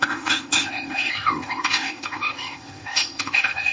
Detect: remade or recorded remade